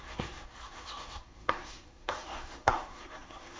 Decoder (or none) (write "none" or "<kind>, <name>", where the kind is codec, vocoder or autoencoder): codec, SNAC